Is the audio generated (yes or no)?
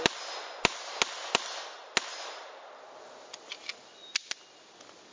no